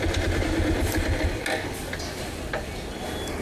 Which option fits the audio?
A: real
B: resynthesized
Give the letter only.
A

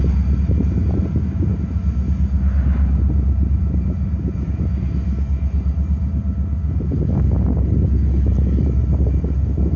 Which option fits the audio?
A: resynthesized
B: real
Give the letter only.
B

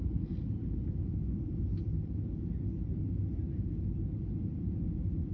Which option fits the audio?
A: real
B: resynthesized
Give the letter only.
A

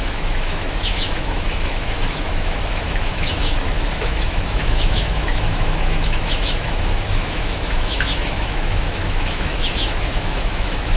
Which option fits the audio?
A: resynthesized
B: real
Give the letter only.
A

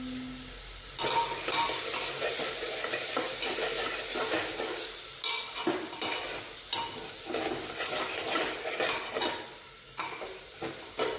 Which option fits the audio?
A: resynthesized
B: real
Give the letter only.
B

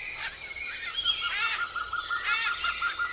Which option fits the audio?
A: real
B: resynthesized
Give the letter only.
A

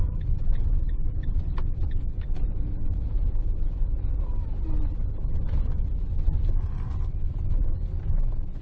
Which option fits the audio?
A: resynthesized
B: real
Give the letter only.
A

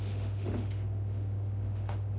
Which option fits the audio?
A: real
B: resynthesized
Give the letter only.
B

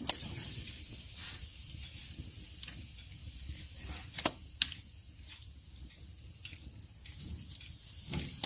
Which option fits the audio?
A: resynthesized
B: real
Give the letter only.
B